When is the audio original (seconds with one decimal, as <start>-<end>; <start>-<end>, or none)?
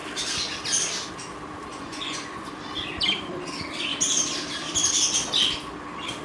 0.0-1.7; 2.5-6.2